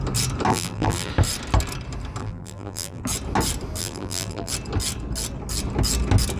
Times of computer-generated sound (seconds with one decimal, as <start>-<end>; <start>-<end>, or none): 0.5-1.1; 2.2-3.0; 3.8-4.5